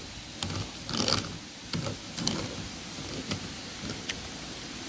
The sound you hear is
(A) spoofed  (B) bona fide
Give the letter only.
B